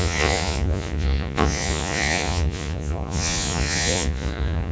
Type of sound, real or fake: fake